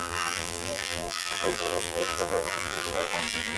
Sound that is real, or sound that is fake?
fake